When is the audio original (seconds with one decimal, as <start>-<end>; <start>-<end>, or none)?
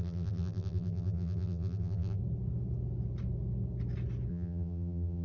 2.2-4.3